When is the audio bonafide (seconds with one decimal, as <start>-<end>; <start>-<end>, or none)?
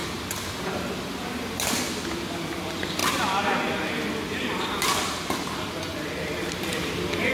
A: 0.0-7.3